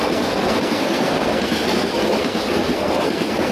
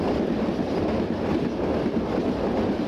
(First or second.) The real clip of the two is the second